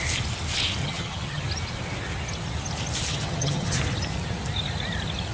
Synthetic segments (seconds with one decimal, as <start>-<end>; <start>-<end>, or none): 0.8-1.5; 3.1-3.8